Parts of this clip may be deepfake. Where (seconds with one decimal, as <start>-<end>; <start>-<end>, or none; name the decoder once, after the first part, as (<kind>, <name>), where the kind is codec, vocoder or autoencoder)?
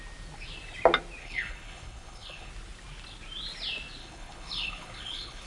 1.2-2.5 (codec, HILCodec); 4.0-5.5